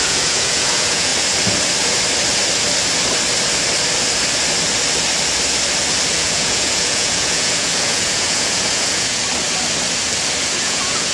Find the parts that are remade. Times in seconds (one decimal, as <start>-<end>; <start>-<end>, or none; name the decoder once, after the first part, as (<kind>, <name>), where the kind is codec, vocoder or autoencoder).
0.0-1.1 (vocoder, Vocos); 6.1-9.2; 10.6-11.1